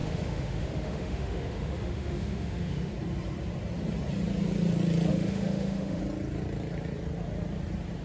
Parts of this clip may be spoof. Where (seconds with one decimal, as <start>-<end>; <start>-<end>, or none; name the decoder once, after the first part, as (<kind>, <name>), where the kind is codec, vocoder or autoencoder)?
0.0-2.9 (autoencoder, DAC-VAE); 5.1-6.0